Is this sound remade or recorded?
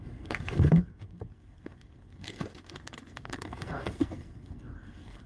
remade